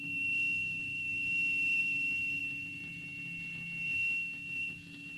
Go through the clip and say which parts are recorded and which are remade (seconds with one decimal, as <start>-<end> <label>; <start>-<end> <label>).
0.0-5.2 recorded